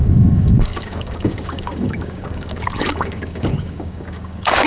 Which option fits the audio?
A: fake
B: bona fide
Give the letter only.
A